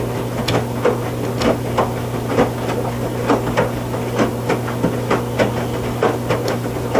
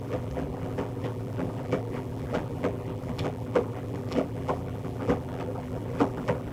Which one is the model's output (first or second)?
second